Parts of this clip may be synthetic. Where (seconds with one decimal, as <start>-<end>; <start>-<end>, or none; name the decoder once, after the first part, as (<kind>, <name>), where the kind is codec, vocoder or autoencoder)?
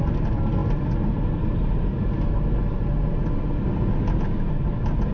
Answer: none